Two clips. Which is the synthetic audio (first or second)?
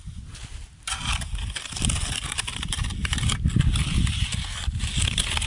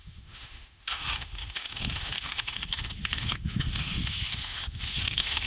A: second